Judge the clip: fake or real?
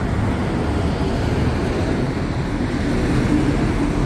real